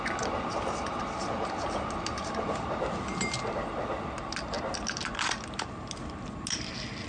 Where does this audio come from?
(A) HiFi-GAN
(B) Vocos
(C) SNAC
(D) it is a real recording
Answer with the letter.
D